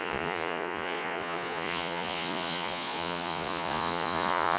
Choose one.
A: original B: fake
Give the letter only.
B